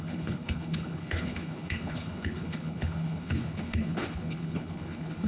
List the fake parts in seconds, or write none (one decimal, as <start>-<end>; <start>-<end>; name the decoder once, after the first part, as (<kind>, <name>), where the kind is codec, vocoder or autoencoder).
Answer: 0.0-5.3 (codec, HILCodec)